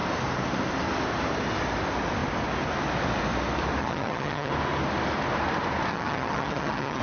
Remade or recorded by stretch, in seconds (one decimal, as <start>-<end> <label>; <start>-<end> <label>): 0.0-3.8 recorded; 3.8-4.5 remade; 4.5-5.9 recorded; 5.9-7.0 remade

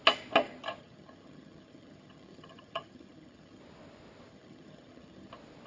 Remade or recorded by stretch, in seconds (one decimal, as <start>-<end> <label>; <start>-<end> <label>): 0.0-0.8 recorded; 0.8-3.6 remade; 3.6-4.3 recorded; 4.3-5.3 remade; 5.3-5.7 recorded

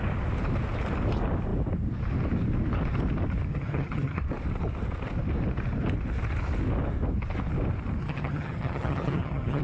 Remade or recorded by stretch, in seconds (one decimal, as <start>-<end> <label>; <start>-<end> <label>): 0.0-3.5 recorded; 3.5-4.2 remade; 4.2-8.0 recorded; 8.0-9.6 remade

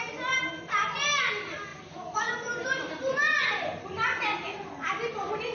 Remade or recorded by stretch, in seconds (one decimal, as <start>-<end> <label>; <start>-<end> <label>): 0.0-5.5 recorded

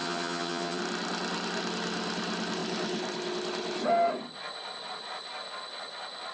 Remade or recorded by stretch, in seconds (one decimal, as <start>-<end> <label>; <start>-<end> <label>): 0.0-0.8 remade; 0.8-6.3 recorded